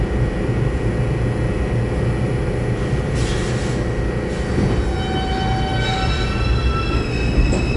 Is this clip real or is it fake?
real